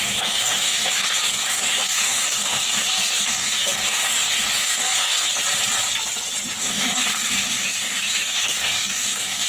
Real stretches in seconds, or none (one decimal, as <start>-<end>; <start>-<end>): 5.3-6.6

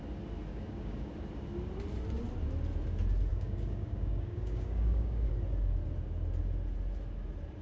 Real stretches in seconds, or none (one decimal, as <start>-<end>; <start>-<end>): 0.0-0.5; 1.1-3.3; 5.3-7.6

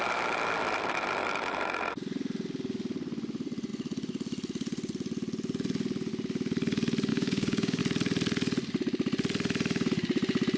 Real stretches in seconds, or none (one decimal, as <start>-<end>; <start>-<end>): 0.0-7.1; 7.8-10.6

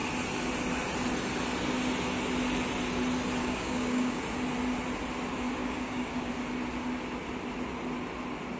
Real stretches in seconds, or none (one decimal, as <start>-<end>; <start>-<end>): 0.0-3.4; 4.2-5.6; 6.3-8.6

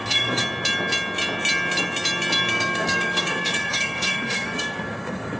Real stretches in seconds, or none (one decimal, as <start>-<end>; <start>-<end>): 0.4-2.5

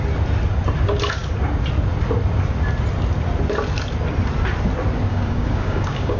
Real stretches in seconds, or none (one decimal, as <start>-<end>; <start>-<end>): 0.0-5.1